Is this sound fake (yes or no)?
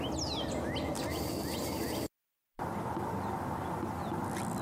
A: no